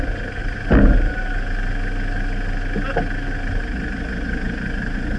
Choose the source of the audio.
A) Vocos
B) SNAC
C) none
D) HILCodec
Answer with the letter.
C